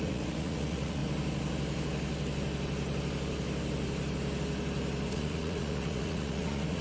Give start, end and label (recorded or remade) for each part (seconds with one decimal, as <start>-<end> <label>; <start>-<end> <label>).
0.0-1.0 remade; 1.0-5.1 recorded; 5.1-6.8 remade